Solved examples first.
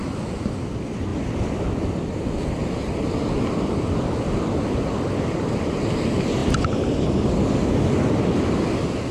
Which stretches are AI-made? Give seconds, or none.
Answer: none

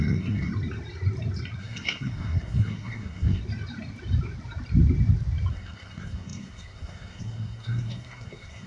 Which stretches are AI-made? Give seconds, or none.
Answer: 0.0-0.5 (codec, SNAC); 1.6-3.4; 5.5-8.7

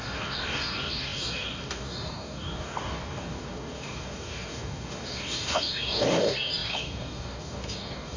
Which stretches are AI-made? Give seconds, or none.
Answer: 0.0-8.2 (codec, DAC)